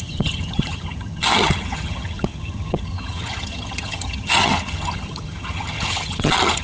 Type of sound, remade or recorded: remade